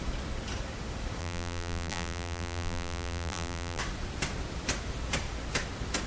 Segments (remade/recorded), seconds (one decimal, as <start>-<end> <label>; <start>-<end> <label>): 0.0-1.2 recorded; 1.2-3.8 remade; 3.8-6.1 recorded